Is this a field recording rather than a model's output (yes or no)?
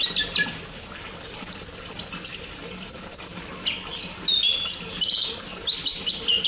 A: yes